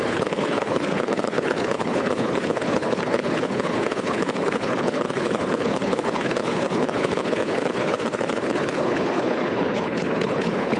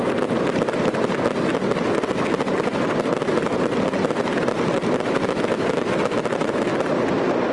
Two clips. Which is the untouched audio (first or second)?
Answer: second